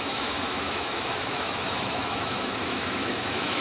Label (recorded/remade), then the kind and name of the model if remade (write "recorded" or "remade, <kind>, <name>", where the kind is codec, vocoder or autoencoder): remade, autoencoder, DAC-VAE